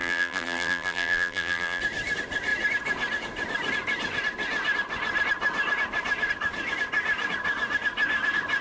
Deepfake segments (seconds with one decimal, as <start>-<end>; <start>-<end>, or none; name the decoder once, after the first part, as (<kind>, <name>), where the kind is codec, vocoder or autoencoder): 0.0-1.8 (vocoder, BigVGAN v2)